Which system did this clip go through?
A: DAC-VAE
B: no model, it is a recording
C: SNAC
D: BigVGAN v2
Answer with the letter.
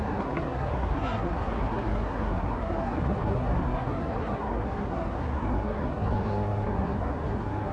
C